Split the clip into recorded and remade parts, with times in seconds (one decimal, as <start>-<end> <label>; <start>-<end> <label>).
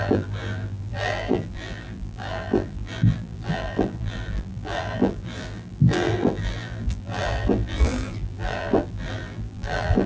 0.0-10.1 remade